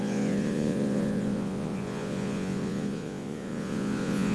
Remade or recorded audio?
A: remade